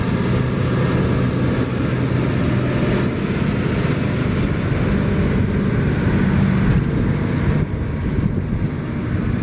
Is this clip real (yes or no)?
yes